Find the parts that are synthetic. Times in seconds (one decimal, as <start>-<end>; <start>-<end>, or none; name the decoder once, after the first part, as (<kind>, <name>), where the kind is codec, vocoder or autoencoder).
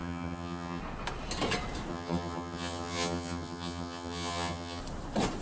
0.0-0.8 (vocoder, HiFi-GAN); 1.9-4.8